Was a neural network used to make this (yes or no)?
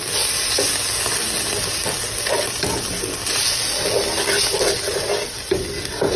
no